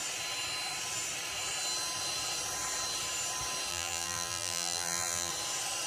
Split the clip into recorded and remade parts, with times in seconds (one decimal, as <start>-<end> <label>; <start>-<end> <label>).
0.0-3.7 recorded; 3.7-5.3 remade; 5.3-5.9 recorded